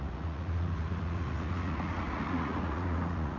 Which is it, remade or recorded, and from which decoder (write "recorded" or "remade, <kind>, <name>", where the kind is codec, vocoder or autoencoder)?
remade, vocoder, Vocos